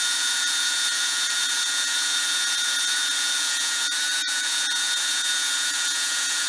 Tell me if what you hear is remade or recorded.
remade